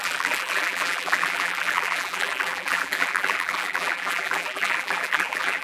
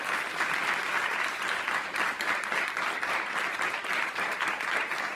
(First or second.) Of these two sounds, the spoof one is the first